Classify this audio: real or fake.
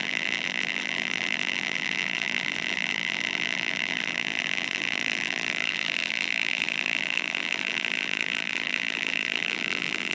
fake